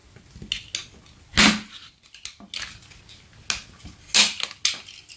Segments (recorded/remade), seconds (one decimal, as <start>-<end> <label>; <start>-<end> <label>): 0.0-5.2 recorded